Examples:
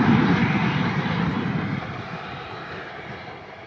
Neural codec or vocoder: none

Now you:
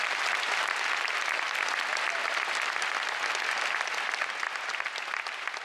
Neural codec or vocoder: none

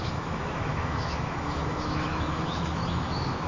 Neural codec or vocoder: autoencoder, DAC-VAE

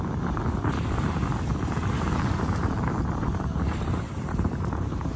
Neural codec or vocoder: vocoder, BigVGAN v2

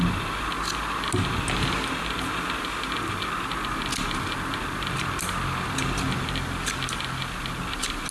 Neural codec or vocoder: none